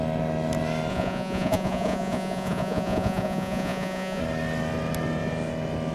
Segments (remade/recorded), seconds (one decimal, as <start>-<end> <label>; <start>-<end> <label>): 0.0-0.9 recorded; 0.9-4.2 remade; 4.2-5.9 recorded